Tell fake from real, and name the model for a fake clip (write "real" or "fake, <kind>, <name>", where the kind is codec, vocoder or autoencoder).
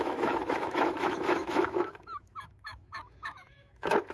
fake, autoencoder, DAC-VAE